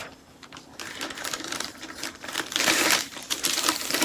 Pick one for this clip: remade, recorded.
remade